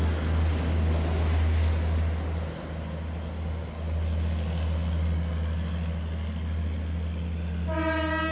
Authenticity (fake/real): real